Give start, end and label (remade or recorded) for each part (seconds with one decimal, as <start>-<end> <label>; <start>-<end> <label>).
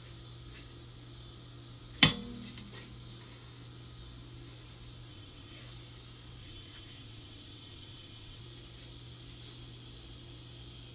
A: 0.0-5.1 recorded; 5.1-5.6 remade; 5.6-6.4 recorded; 6.4-8.4 remade; 8.4-10.9 recorded